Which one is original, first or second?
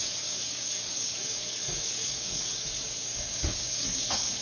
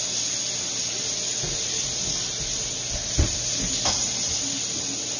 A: second